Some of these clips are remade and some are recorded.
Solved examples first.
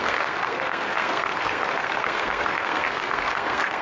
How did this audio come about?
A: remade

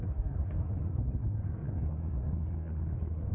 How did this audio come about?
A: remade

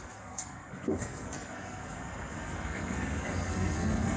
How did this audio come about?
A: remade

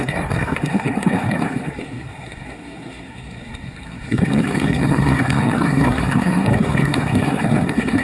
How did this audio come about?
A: remade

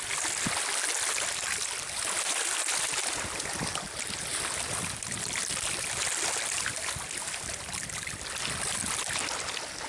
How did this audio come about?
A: recorded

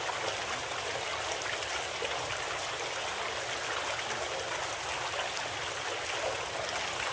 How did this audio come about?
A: recorded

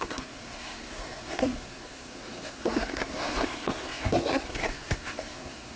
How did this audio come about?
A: remade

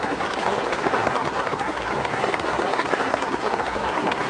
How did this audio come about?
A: remade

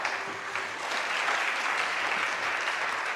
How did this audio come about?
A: recorded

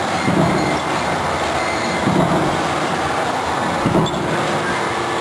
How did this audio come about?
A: recorded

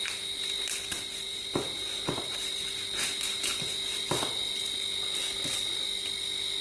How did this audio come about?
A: recorded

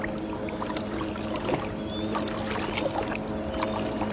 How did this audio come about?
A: recorded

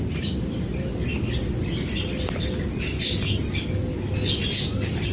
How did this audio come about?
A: recorded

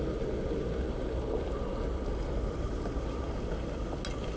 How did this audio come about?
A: recorded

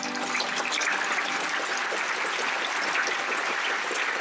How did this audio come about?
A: recorded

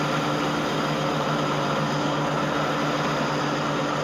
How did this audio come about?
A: recorded